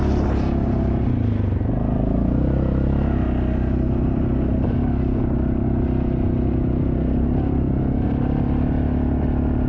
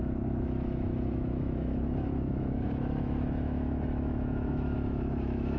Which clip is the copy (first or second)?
second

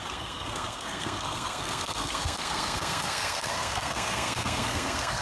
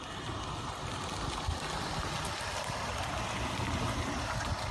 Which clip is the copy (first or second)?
first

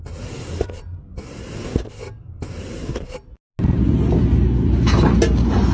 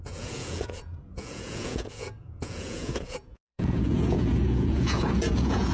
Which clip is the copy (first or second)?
second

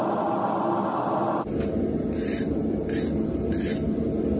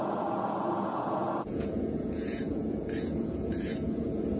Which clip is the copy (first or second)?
second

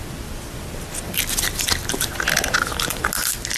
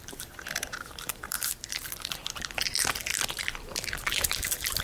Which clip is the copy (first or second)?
second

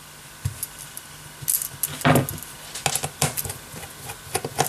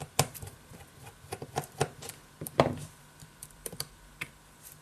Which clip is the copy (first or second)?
second